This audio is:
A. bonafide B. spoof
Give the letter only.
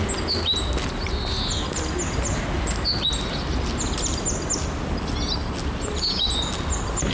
A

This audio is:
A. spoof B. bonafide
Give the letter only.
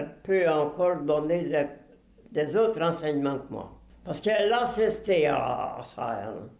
B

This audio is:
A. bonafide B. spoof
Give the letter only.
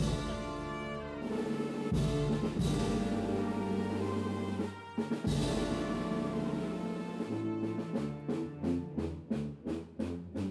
A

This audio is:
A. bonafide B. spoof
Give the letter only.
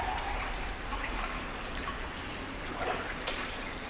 B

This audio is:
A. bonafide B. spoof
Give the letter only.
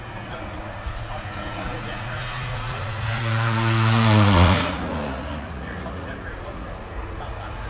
B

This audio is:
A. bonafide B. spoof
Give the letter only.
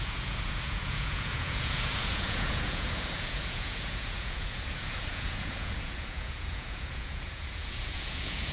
B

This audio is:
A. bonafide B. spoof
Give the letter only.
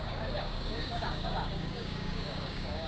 B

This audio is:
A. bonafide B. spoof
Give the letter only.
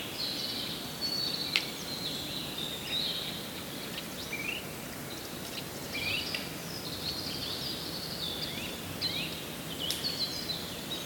A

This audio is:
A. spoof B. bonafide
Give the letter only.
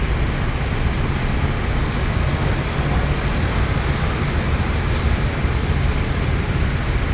B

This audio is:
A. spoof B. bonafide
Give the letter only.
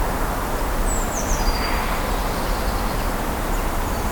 B